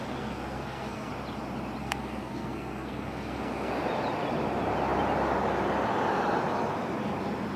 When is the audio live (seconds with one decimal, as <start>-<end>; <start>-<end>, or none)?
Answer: 1.1-1.8; 3.7-7.6